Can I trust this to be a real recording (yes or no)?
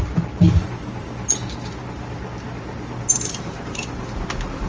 yes